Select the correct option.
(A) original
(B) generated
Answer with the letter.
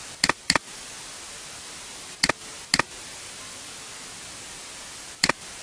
A